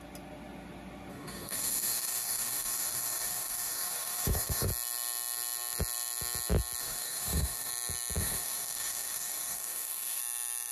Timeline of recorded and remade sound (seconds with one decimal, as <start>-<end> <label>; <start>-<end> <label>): 0.0-1.1 recorded; 1.1-4.7 remade; 4.7-6.8 recorded; 6.8-7.7 remade; 7.7-8.2 recorded; 8.2-10.2 remade; 10.2-10.7 recorded